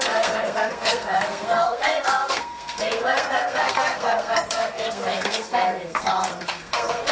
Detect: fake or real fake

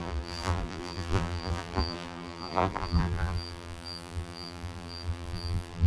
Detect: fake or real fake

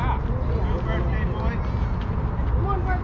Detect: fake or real real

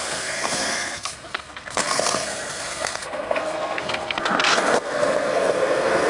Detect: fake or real fake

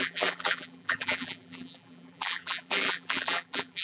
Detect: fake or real fake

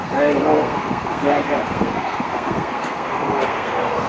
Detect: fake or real fake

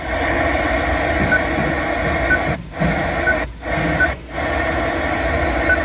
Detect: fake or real real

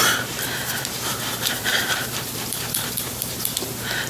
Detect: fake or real fake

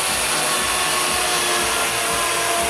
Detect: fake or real real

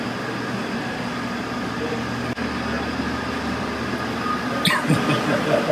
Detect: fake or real real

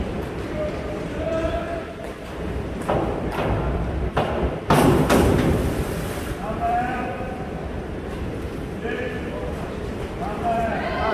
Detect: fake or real fake